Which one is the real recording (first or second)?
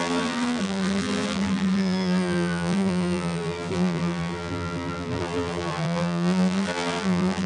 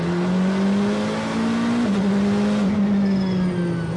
second